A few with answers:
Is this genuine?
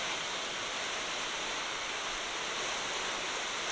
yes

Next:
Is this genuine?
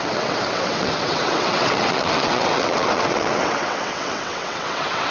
no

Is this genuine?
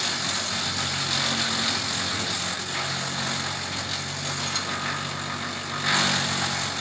yes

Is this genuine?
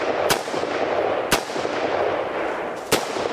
yes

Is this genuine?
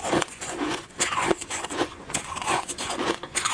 no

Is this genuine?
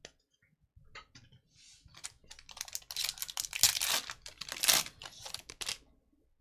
yes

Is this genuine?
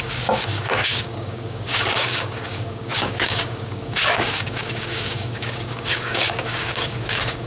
no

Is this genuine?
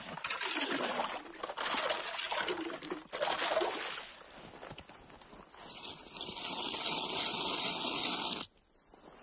yes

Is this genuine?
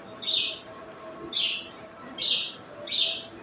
yes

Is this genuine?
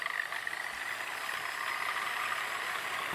yes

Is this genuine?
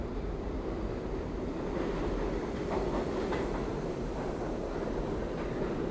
yes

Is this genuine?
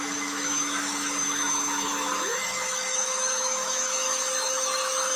no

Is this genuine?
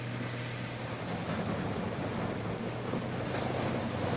yes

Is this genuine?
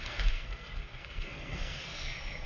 no